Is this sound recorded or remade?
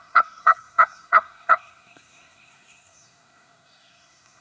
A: remade